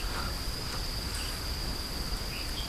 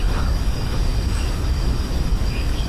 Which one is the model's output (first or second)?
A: second